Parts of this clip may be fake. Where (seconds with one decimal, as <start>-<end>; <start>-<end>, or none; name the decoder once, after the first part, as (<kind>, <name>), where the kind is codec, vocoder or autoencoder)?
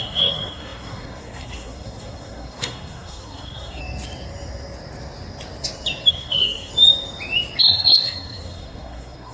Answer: 0.0-3.8 (codec, SNAC); 6.1-6.7; 7.6-9.3